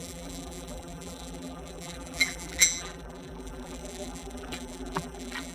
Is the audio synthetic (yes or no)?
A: yes